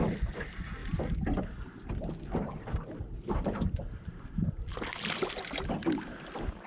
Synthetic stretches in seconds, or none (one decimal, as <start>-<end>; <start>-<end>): none